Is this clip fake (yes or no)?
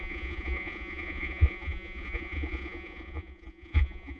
yes